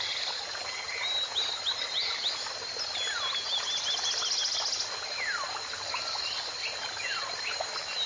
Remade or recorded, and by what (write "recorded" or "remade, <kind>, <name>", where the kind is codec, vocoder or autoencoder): recorded